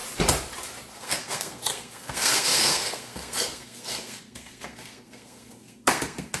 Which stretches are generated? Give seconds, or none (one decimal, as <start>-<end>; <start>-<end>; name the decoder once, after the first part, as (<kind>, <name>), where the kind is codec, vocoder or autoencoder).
1.0-6.4 (codec, SNAC)